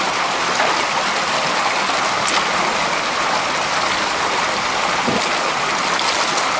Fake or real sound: real